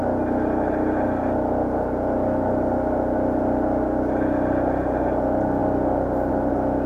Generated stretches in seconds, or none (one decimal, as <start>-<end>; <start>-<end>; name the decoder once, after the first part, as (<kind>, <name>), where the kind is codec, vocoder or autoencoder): none